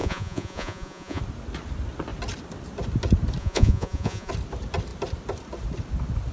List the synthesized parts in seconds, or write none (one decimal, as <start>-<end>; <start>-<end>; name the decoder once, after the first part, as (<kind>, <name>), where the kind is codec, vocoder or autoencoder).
0.0-1.2 (vocoder, Vocos); 3.4-4.3